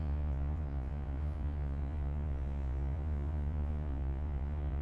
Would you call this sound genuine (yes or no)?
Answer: no